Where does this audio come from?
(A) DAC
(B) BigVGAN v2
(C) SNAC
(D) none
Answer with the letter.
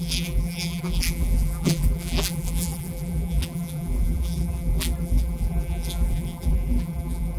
B